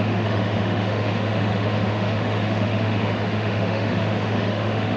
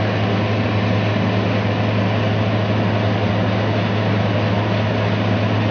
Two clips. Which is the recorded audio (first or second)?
second